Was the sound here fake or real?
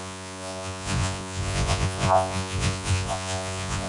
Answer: fake